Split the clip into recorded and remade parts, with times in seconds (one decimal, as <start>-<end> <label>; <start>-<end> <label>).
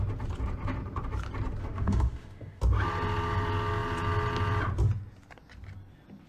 0.0-1.6 recorded; 1.6-2.6 remade; 2.6-6.3 recorded